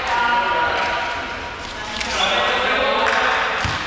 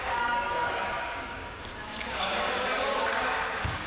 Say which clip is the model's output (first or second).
second